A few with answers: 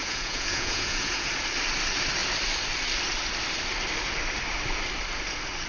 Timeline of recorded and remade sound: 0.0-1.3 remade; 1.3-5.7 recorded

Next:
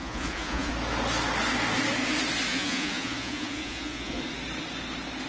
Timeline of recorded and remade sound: 0.0-0.7 remade; 0.7-2.5 recorded; 2.5-4.2 remade; 4.2-5.3 recorded

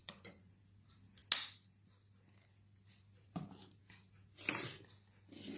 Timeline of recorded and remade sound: 0.0-0.5 remade; 0.5-5.6 recorded

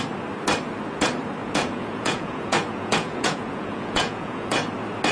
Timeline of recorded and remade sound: 0.0-1.4 recorded; 1.4-4.5 remade; 4.5-5.1 recorded

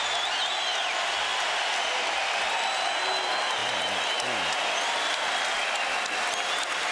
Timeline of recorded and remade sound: 0.0-6.9 recorded

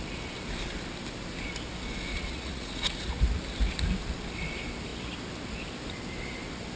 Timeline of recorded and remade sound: 0.0-2.1 recorded; 2.1-3.2 remade; 3.2-6.8 recorded

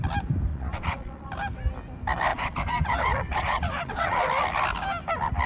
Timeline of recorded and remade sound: 0.0-0.5 recorded; 0.5-1.3 remade; 1.3-2.3 recorded; 2.3-4.2 remade; 4.2-5.5 recorded

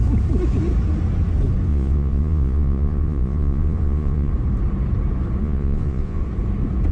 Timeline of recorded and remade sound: 0.0-1.7 recorded; 1.7-4.3 remade; 4.3-5.4 recorded; 5.4-6.2 remade; 6.2-6.9 recorded